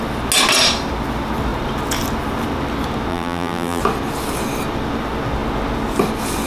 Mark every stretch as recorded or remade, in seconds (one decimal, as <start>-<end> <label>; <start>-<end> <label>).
0.0-3.1 recorded; 3.1-3.8 remade; 3.8-6.5 recorded